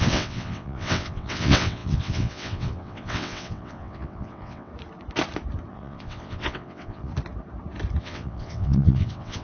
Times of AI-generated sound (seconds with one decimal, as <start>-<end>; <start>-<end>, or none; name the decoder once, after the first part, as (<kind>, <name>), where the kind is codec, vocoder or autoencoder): 0.0-4.7 (vocoder, WaveNeXt); 5.7-7.1; 8.0-9.4